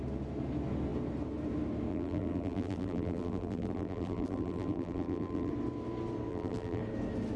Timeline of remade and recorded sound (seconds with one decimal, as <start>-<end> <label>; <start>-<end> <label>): 0.0-1.9 recorded; 1.9-5.5 remade; 5.5-6.3 recorded; 6.3-6.8 remade; 6.8-7.4 recorded